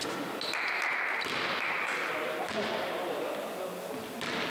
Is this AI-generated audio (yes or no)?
no